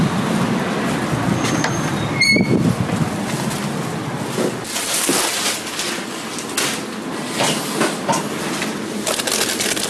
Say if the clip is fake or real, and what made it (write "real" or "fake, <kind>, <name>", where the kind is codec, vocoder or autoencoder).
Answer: real